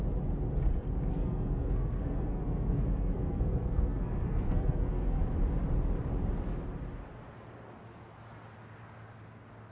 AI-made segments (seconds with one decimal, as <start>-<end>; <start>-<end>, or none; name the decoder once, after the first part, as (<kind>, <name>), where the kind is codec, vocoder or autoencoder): 1.1-5.2 (codec, SNAC)